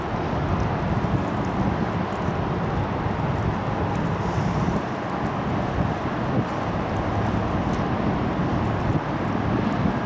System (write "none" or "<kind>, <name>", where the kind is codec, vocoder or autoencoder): none